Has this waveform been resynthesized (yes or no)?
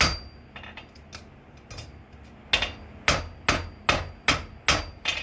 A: no